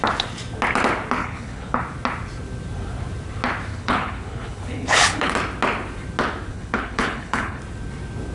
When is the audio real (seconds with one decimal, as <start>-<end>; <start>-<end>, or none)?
0.0-1.2; 1.8-3.7; 5.3-6.5; 7.6-8.3